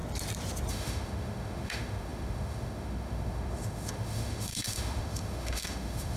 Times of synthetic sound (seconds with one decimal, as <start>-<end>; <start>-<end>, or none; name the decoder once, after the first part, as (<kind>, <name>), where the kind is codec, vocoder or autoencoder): 0.7-6.2 (autoencoder, DAC-VAE)